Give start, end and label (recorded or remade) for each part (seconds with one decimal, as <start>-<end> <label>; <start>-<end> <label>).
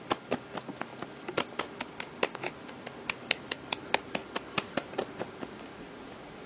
0.0-5.7 recorded; 5.7-6.5 remade